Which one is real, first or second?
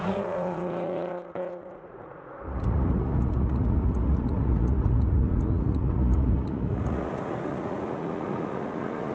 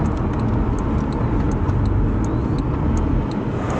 second